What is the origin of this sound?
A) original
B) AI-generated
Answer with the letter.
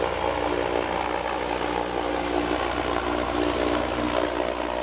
A